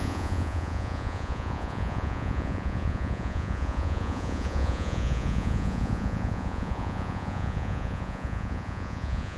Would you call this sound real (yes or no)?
no